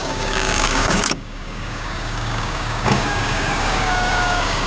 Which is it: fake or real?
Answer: fake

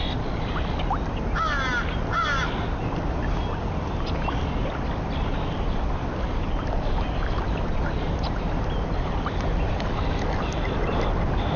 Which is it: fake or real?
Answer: real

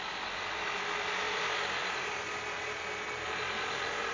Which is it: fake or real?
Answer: real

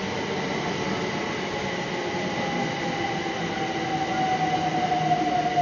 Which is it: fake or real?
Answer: real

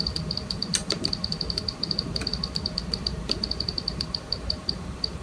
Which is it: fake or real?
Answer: fake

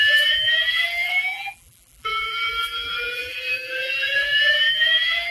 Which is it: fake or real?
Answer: fake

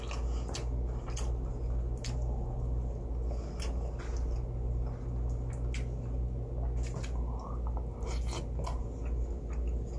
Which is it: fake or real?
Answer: real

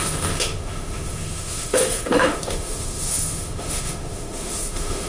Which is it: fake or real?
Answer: fake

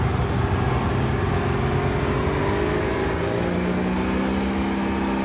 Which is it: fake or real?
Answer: real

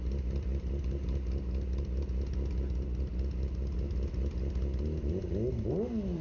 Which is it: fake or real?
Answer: real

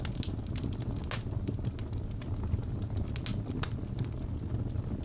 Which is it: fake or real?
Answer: real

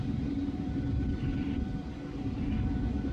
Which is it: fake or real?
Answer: fake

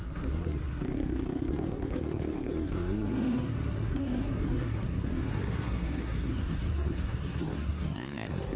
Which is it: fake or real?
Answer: fake